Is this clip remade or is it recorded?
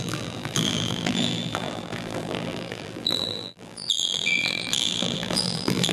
remade